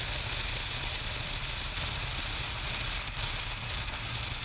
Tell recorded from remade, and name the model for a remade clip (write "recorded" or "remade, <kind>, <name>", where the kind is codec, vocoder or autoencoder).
recorded